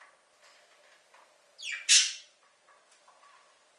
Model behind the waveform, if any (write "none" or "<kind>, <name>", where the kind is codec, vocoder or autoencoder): none